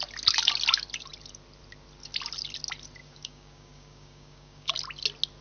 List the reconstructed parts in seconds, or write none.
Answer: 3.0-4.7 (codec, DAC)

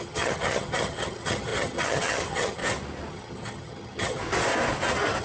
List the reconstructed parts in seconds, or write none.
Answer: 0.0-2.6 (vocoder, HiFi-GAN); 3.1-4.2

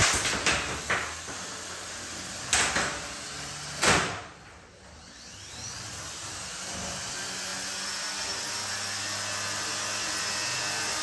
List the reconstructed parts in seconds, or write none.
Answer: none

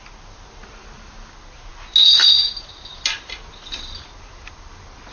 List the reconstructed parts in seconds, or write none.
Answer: none

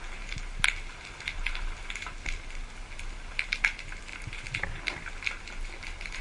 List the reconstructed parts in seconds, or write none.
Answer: none